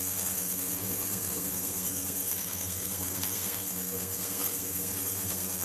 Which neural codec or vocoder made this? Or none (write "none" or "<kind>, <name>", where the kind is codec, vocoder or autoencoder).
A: codec, SNAC